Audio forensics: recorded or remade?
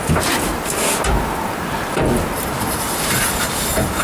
recorded